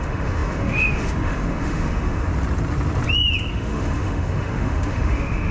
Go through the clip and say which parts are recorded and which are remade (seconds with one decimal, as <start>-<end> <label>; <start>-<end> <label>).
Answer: 0.0-2.3 remade; 2.3-3.5 recorded; 3.5-5.5 remade